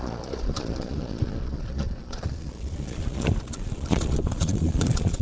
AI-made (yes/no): yes